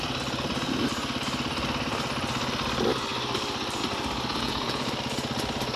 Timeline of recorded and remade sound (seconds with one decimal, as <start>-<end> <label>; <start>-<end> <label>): 0.0-4.3 recorded; 4.3-4.9 remade; 4.9-5.8 recorded